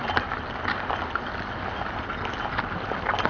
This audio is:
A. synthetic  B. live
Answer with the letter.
B